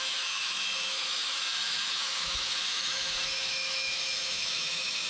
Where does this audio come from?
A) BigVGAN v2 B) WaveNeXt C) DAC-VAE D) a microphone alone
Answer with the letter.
C